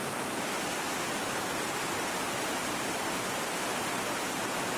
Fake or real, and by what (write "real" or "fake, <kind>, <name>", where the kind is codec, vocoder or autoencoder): real